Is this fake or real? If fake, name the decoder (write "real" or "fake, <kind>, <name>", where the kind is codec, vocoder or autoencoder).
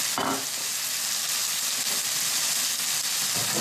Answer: real